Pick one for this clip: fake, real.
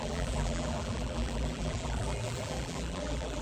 fake